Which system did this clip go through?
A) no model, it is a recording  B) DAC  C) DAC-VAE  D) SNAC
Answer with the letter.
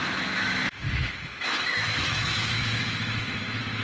C